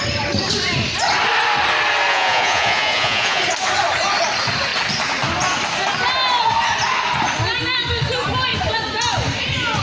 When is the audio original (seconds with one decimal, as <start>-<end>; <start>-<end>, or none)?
0.0-2.1; 3.4-9.8